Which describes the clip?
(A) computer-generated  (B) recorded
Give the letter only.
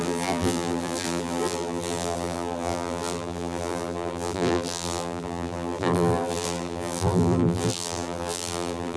A